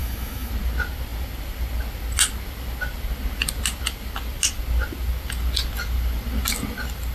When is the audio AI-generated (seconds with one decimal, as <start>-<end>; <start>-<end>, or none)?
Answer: 0.0-0.5